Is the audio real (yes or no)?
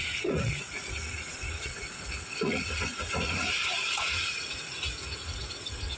no